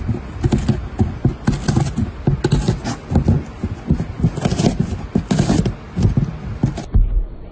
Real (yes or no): yes